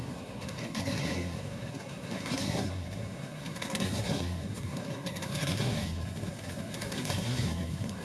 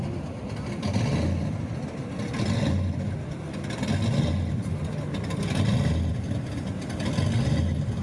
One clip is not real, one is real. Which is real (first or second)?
second